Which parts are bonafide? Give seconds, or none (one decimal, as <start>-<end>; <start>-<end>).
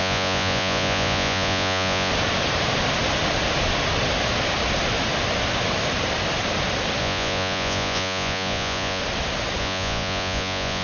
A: 2.1-7.0; 9.0-9.6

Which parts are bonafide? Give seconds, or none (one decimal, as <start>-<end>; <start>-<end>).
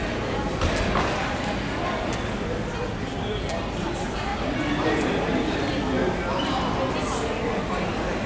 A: 0.0-8.3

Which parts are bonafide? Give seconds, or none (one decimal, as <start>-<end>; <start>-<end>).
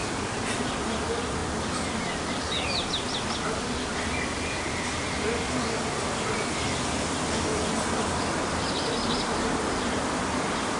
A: 0.0-10.8